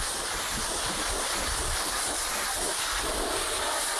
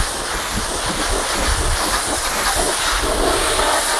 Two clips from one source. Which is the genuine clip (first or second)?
second